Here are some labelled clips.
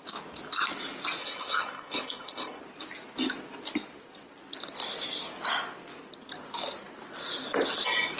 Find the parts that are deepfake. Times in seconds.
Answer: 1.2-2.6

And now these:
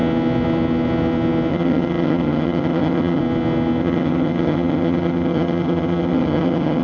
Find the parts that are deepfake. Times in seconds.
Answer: 1.5-3.2; 3.8-6.8

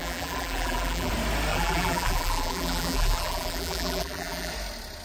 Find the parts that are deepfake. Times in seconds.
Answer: 0.0-1.1; 1.5-4.5

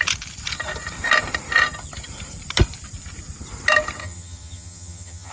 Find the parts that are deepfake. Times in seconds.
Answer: 4.0-5.3

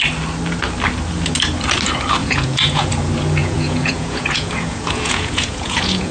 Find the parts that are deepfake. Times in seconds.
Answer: 2.2-2.9; 3.4-6.1

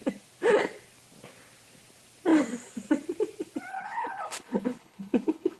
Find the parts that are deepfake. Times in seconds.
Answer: 3.7-5.6

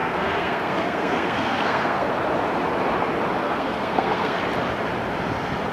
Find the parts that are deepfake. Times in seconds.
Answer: 0.0-2.1; 3.4-4.4

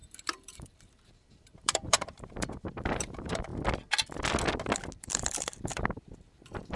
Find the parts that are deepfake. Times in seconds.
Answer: 0.0-3.5; 5.0-6.8